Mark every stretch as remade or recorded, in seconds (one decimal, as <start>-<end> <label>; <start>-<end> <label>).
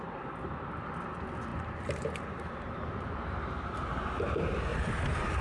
0.0-1.5 recorded; 1.5-3.4 remade; 3.4-4.7 recorded; 4.7-5.4 remade